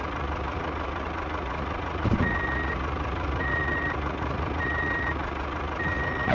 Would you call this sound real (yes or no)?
no